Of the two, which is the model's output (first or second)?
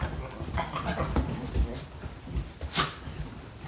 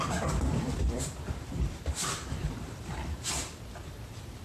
second